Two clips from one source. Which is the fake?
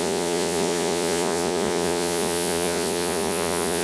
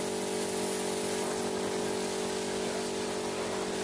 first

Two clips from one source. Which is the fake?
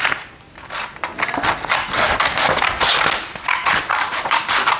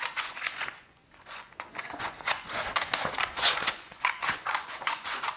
second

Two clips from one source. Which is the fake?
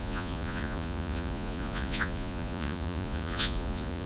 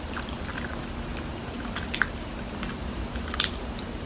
first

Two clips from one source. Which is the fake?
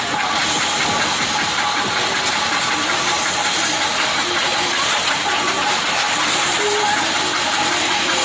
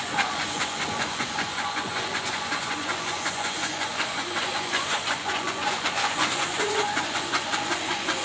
second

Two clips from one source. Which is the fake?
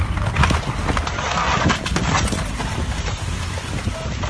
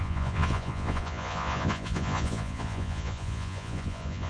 second